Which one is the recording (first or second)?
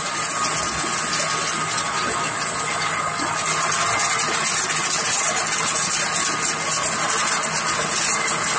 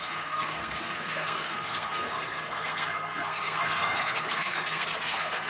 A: first